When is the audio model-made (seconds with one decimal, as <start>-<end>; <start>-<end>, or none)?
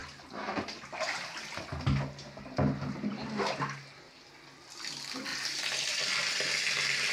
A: 5.3-6.0